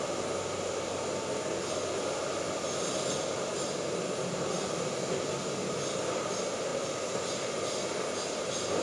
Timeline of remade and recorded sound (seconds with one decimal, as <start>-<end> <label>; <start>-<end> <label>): 0.0-8.8 recorded